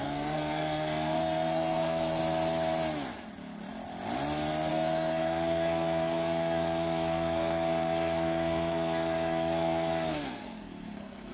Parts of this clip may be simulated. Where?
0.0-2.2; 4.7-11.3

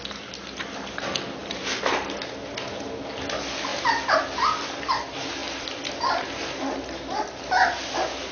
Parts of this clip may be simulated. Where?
none

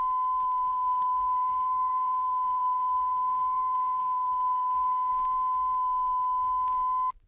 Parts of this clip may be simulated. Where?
0.7-5.1

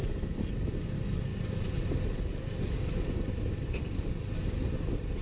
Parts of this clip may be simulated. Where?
1.3-4.4